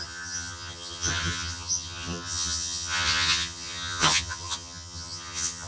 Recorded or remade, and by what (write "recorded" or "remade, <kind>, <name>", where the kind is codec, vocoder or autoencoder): remade, vocoder, HiFi-GAN